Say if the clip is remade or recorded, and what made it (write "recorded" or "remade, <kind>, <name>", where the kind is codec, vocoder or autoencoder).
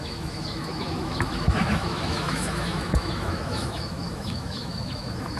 remade, autoencoder, DAC-VAE